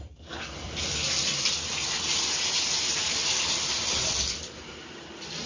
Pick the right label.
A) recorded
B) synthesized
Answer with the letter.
A